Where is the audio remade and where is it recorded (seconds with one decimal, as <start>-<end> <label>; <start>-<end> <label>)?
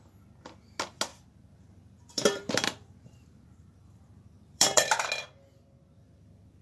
0.0-1.1 recorded; 1.1-5.1 remade; 5.1-6.6 recorded